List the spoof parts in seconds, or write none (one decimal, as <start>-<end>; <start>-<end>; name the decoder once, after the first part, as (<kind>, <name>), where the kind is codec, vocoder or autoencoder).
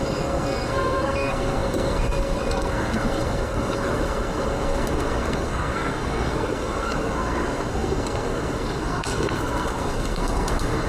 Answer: 0.0-10.9 (codec, SNAC)